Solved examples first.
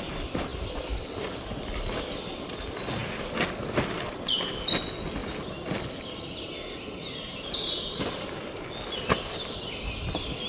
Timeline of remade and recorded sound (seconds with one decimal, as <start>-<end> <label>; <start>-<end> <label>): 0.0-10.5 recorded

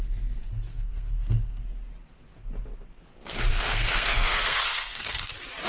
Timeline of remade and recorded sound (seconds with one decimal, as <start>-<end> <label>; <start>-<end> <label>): 0.0-0.7 recorded; 0.7-1.6 remade; 1.6-3.5 recorded; 3.5-5.3 remade; 5.3-5.7 recorded

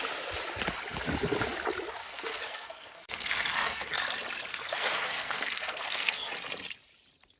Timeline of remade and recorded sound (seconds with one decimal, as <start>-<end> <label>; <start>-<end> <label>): 0.0-2.0 recorded; 2.0-4.0 remade; 4.0-4.5 recorded; 4.5-6.3 remade; 6.3-7.4 recorded

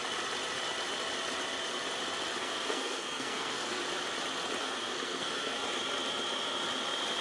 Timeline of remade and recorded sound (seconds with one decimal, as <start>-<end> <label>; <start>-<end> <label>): 0.0-2.4 recorded; 2.4-3.8 remade; 3.8-4.6 recorded; 4.6-5.6 remade; 5.6-7.2 recorded

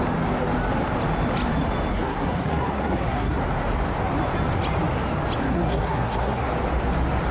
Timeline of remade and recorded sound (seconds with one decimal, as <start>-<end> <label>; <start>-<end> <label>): 0.0-1.9 recorded; 1.9-3.4 remade; 3.4-5.4 recorded; 5.4-6.5 remade; 6.5-7.3 recorded